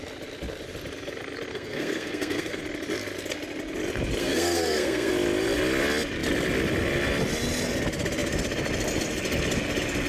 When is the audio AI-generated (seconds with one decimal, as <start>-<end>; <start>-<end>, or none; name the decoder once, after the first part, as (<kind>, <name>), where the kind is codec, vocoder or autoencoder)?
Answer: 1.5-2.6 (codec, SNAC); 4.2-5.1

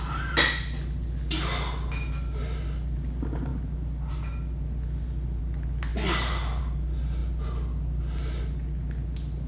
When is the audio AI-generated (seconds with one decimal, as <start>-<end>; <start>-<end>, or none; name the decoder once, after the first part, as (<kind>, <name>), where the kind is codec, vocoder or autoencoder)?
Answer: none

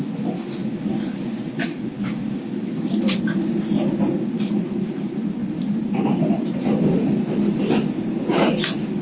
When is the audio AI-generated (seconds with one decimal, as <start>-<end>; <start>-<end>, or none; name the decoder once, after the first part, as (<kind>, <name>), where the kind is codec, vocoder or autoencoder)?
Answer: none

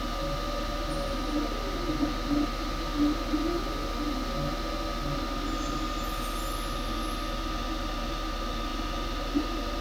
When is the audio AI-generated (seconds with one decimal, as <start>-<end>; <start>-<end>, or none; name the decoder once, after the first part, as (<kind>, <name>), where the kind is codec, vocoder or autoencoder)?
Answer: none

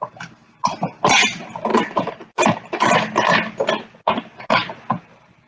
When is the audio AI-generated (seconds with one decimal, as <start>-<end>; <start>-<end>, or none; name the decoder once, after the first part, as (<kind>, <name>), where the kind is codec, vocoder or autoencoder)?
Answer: 0.0-0.4 (vocoder, BigVGAN v2); 1.2-1.7; 5.0-5.5